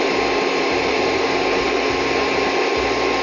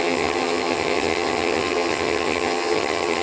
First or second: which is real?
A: first